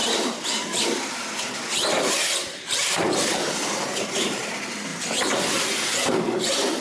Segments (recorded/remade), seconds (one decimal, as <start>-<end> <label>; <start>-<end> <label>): 0.0-1.2 remade; 1.2-2.4 recorded; 2.4-4.5 remade; 4.5-6.8 recorded